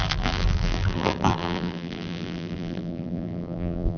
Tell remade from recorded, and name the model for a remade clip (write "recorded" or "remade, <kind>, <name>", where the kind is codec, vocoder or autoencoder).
remade, vocoder, BigVGAN v2